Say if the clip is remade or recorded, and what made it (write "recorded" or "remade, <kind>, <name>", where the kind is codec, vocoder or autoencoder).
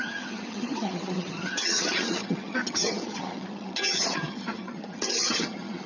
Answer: remade, vocoder, HiFi-GAN